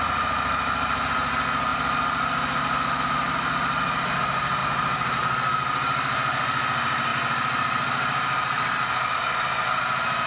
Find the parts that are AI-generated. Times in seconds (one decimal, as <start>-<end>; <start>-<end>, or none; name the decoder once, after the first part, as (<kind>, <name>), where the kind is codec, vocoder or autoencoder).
none